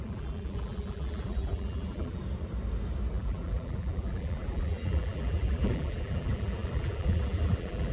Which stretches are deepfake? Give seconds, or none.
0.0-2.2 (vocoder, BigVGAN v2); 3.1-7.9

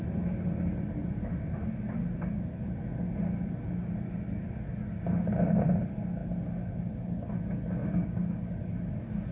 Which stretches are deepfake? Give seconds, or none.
7.8-8.5 (codec, DAC)

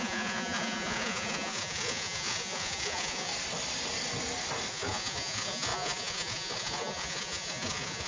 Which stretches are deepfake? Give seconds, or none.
0.0-3.3 (vocoder, Vocos); 4.7-8.1

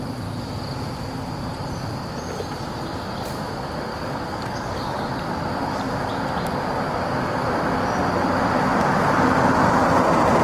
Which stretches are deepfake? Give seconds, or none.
3.9-5.1 (codec, DAC)

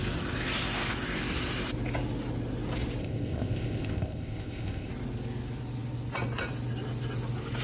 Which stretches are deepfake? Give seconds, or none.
3.0-4.9 (codec, ZipCodec)

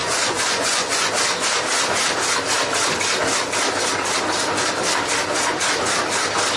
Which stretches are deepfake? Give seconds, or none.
0.0-1.1 (vocoder, Vocos)

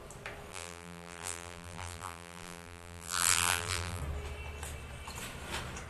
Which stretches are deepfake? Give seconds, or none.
0.5-4.0 (vocoder, BigVGAN v2)

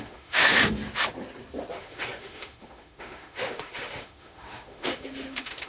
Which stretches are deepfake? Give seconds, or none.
0.0-0.6 (autoencoder, DAC-VAE); 1.7-5.7